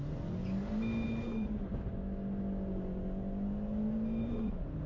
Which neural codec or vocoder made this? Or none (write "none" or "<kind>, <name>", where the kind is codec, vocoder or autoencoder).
none